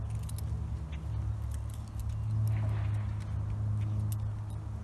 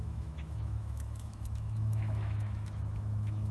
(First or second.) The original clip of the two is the first